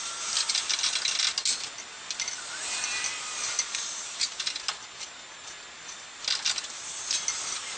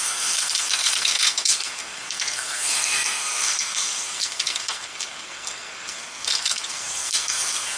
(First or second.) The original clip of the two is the first